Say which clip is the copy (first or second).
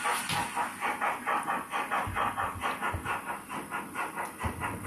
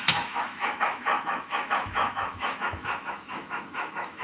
second